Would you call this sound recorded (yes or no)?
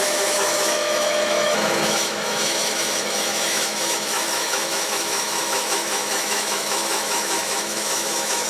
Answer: no